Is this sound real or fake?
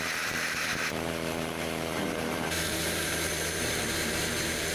fake